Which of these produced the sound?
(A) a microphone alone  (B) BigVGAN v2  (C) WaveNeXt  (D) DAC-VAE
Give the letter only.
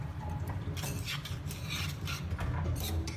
A